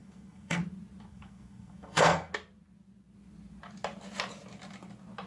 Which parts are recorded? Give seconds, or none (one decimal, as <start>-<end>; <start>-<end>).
0.6-1.1; 2.3-5.3